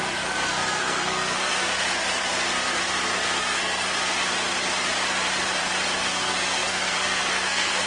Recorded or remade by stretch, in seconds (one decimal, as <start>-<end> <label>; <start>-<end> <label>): 0.0-1.7 remade; 1.7-3.4 recorded; 3.4-3.9 remade; 3.9-6.0 recorded; 6.0-7.9 remade

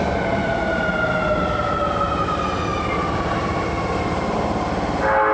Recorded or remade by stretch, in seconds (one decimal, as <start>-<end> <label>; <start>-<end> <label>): 0.0-5.3 recorded

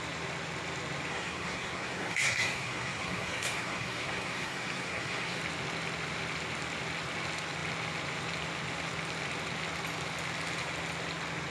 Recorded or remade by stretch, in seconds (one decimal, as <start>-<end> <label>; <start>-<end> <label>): 0.0-1.1 recorded; 1.1-5.4 remade; 5.4-11.5 recorded

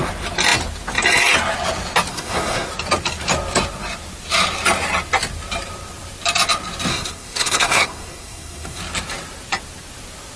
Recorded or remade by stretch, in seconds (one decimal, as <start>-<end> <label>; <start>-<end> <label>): 0.0-2.1 recorded; 2.1-2.7 remade; 2.7-6.9 recorded; 6.9-8.8 remade; 8.8-10.4 recorded

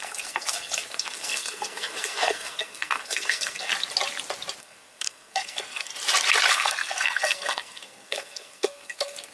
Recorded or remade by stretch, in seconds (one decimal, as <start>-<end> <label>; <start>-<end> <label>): 0.0-3.7 remade; 3.7-4.6 recorded; 4.6-5.9 remade; 5.9-6.5 recorded; 6.5-9.3 remade

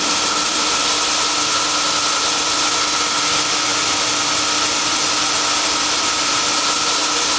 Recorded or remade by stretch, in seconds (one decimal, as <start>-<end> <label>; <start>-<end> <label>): 0.0-7.4 recorded

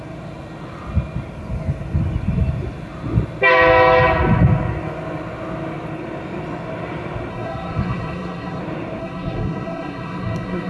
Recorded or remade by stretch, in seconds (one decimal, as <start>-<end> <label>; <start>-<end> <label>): 0.0-7.3 recorded; 7.3-8.6 remade; 8.6-9.0 recorded; 9.0-10.7 remade

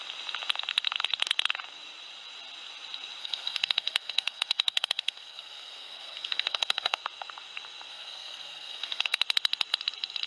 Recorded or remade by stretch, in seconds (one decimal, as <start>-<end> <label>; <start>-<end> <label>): 0.0-3.2 recorded; 3.2-7.0 remade; 7.0-7.9 recorded; 7.9-9.2 remade; 9.2-10.3 recorded